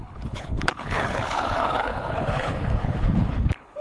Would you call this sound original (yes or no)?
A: no